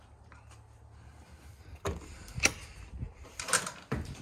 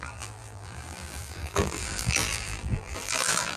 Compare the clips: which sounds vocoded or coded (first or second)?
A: second